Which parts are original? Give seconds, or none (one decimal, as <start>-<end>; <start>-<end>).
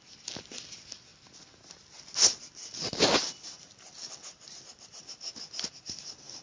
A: 0.0-6.4